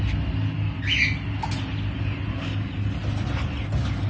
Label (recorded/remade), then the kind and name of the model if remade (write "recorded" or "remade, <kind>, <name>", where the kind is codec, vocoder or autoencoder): recorded